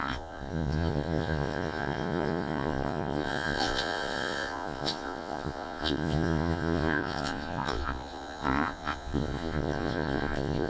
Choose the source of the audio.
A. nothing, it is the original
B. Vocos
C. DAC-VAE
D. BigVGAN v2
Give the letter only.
B